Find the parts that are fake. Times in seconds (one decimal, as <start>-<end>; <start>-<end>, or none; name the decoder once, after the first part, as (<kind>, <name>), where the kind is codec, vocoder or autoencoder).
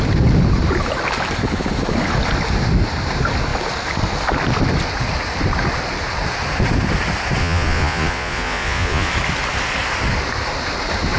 7.4-9.1 (vocoder, Vocos)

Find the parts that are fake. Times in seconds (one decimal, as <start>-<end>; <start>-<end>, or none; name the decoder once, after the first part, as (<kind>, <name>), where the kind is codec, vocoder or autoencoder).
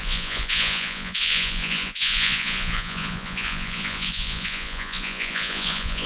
0.0-6.1 (vocoder, Vocos)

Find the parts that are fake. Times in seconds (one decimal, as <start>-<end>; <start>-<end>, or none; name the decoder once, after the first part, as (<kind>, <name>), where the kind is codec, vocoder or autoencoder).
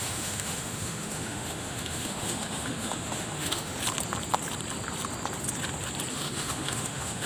0.0-3.7 (autoencoder, DAC-VAE); 6.1-7.3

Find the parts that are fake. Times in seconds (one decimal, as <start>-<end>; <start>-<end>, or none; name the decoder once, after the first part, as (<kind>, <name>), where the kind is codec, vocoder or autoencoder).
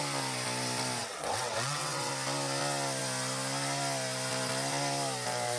1.0-2.1 (vocoder, WaveNeXt)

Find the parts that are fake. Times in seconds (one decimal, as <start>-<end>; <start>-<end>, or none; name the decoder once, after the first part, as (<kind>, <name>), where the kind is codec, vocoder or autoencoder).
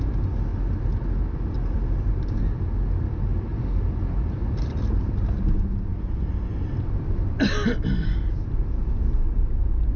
0.5-1.0 (vocoder, BigVGAN v2); 3.5-4.8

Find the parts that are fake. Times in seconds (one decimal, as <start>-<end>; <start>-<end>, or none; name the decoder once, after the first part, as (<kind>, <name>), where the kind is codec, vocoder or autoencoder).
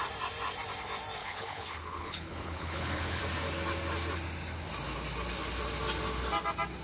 1.2-3.2 (codec, HILCodec)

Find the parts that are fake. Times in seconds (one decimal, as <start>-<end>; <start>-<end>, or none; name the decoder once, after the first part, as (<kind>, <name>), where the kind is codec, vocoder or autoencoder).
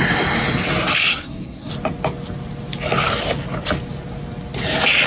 1.1-1.7 (codec, SNAC)